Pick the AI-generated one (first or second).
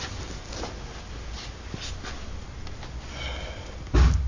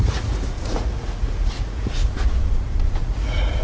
second